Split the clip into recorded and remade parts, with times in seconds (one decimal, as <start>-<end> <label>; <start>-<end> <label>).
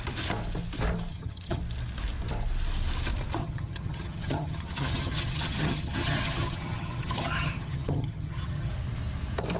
0.0-1.1 recorded; 1.1-1.6 remade; 1.6-3.4 recorded; 3.4-8.7 remade; 8.7-9.6 recorded